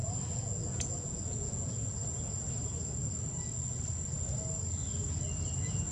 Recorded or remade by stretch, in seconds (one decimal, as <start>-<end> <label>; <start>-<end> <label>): 0.0-1.9 remade; 1.9-5.9 recorded